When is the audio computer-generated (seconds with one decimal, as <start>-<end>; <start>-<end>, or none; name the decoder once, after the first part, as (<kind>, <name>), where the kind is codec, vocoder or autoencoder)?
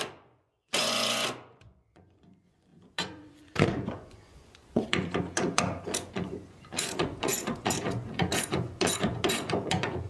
0.0-10.1 (vocoder, Vocos)